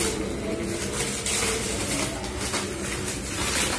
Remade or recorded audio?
recorded